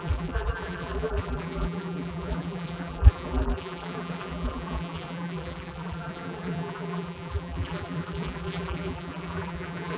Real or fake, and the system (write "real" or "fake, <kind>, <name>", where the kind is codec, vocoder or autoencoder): fake, vocoder, BigVGAN v2